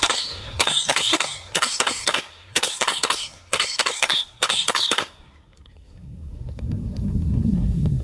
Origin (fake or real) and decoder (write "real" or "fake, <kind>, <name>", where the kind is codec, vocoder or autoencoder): fake, codec, SNAC